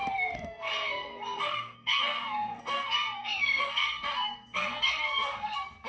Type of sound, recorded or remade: remade